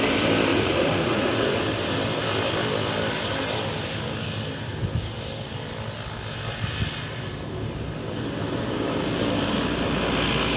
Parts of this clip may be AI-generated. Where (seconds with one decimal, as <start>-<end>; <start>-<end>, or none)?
0.5-1.6